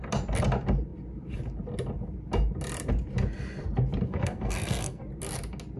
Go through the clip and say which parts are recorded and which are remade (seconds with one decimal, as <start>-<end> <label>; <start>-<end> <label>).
0.0-4.1 recorded; 4.1-5.0 remade; 5.0-5.8 recorded